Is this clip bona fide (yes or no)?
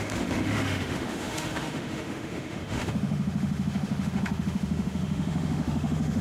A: no